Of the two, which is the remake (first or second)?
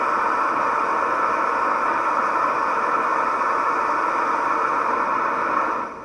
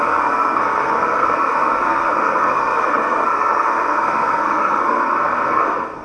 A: second